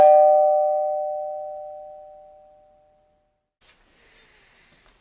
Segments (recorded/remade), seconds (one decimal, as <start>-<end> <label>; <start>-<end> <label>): 0.0-5.0 recorded